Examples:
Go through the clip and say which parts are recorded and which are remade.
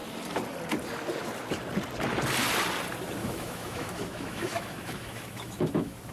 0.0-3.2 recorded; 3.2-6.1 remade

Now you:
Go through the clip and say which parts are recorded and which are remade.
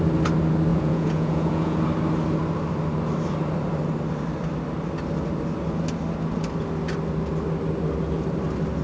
0.0-0.7 recorded; 0.7-1.8 remade; 1.8-8.8 recorded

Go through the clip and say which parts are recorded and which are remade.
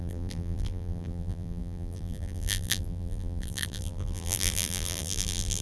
0.0-5.6 remade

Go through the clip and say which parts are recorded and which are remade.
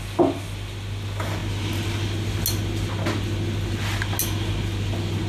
0.0-5.3 recorded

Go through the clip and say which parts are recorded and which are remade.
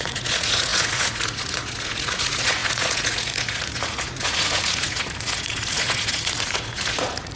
0.0-7.4 remade